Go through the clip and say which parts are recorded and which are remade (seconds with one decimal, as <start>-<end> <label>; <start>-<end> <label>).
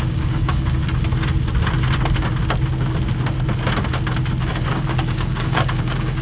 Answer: 0.0-0.8 remade; 0.8-4.5 recorded; 4.5-6.2 remade